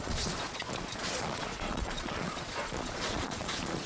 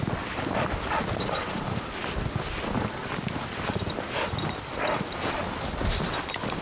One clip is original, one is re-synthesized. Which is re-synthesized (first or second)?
first